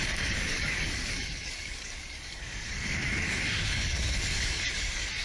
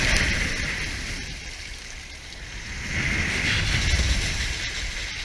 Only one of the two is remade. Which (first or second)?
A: first